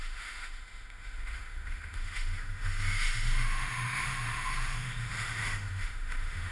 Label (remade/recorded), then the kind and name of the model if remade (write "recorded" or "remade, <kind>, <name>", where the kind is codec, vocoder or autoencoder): remade, autoencoder, DAC-VAE